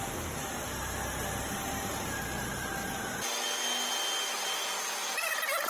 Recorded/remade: recorded